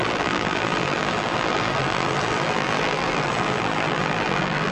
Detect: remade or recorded remade